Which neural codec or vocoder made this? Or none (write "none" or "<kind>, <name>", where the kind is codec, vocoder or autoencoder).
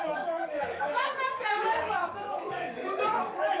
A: codec, DAC